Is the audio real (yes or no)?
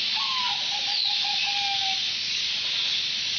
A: yes